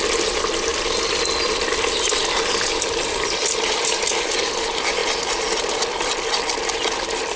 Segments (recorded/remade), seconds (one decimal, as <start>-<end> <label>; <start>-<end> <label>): 0.0-7.4 recorded